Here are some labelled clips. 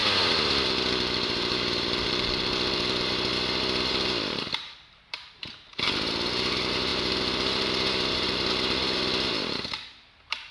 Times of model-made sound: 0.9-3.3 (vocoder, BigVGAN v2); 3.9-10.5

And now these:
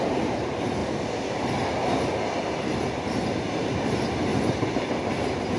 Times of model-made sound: 0.0-0.8 (vocoder, BigVGAN v2); 3.4-4.3

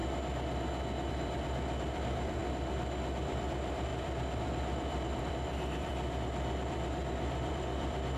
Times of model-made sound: 1.1-2.4 (vocoder, BigVGAN v2); 3.2-5.9; 6.6-8.2

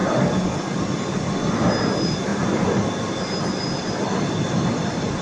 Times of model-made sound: 1.6-2.3 (vocoder, BigVGAN v2); 3.4-5.2

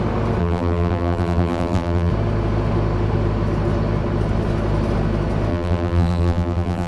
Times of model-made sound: 0.4-2.1 (vocoder, BigVGAN v2); 5.5-6.9

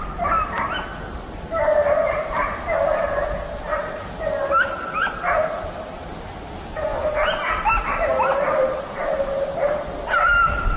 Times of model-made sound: 0.0-0.9 (vocoder, BigVGAN v2); 1.9-3.8; 6.2-10.8

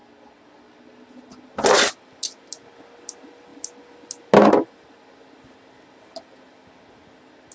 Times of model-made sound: none